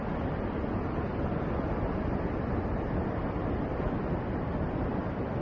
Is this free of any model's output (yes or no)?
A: yes